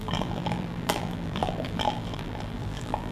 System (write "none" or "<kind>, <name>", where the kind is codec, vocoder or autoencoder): vocoder, BigVGAN v2